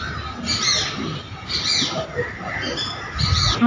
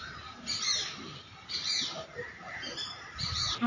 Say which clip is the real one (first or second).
first